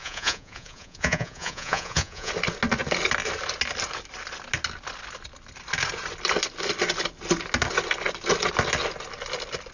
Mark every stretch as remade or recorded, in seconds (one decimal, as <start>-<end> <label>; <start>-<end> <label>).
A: 0.0-2.3 remade; 2.3-9.7 recorded